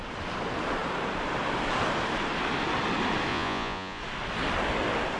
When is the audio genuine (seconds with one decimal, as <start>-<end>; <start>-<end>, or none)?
0.0-3.3; 4.0-5.2

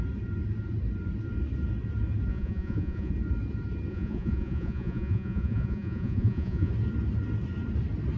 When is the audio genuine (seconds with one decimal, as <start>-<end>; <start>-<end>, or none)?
0.0-2.3; 3.1-3.9; 6.7-8.2